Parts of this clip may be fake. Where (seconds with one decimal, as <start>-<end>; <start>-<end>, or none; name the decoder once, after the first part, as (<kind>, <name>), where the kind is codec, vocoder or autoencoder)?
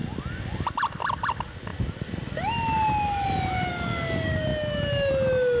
none